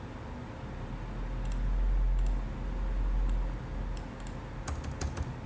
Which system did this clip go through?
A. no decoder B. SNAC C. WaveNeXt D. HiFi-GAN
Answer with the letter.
A